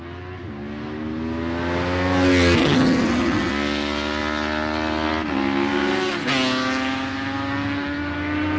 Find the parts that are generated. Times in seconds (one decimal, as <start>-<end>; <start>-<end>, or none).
2.6-3.5